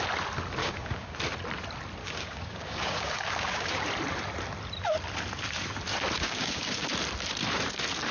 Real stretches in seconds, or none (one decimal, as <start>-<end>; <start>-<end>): 0.0-0.6; 1.2-2.0; 3.8-6.2; 6.9-8.1